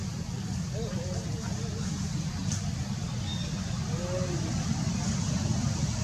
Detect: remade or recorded recorded